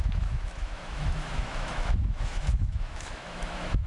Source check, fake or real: fake